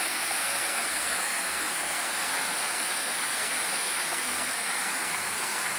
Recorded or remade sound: remade